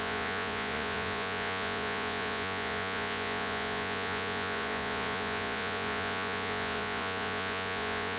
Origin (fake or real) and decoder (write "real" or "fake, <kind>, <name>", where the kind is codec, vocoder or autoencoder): fake, vocoder, Vocos